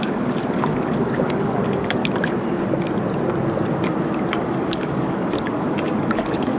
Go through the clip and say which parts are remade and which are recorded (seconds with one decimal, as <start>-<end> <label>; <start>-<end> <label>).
0.0-2.0 remade; 2.0-4.3 recorded; 4.3-6.6 remade